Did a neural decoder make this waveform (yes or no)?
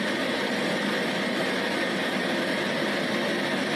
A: no